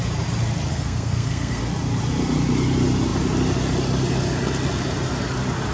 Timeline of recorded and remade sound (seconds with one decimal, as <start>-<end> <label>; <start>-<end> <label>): 0.0-0.7 recorded; 0.7-1.6 remade; 1.6-5.7 recorded